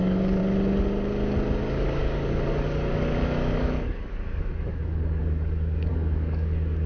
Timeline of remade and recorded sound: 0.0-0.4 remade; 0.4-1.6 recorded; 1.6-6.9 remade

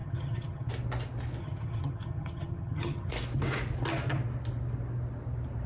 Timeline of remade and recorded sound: 0.0-0.7 remade; 0.7-1.4 recorded; 1.4-3.1 remade; 3.1-5.7 recorded

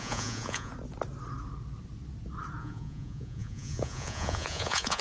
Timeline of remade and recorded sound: 0.0-0.7 remade; 0.7-2.6 recorded; 2.6-5.0 remade